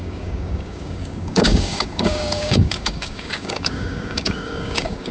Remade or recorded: remade